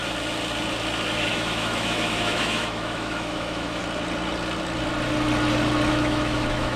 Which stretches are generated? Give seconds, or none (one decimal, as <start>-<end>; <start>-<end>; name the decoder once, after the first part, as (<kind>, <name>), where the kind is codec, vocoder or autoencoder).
1.3-3.8 (autoencoder, DAC-VAE); 5.9-6.8